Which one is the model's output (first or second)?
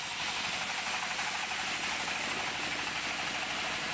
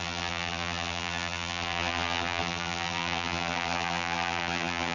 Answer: second